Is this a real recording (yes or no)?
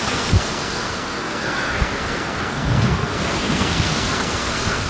no